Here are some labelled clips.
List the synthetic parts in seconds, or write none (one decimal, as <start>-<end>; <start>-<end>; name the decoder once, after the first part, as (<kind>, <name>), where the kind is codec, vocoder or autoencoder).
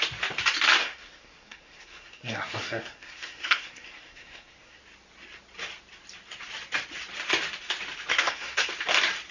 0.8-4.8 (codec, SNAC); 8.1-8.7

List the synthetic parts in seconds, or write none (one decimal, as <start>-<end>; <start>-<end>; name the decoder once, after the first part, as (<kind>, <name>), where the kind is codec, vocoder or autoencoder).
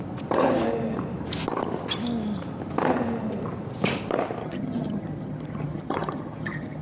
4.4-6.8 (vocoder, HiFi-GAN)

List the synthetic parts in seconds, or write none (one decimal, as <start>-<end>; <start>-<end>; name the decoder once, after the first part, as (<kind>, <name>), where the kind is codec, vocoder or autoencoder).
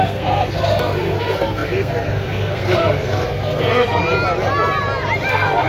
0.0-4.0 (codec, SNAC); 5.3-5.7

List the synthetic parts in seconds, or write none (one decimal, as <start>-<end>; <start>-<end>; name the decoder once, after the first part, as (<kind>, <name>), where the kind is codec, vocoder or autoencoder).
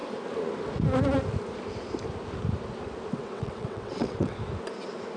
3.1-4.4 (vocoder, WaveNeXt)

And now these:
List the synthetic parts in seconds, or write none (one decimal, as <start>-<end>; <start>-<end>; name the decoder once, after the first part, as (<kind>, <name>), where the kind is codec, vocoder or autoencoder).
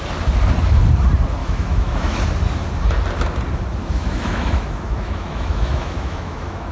1.4-2.2 (autoencoder, DAC-VAE); 3.8-6.7